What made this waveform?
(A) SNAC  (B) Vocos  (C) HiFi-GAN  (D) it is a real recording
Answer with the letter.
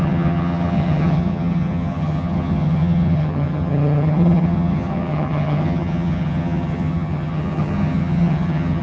C